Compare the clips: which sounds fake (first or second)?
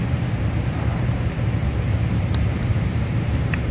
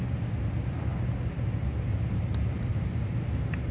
first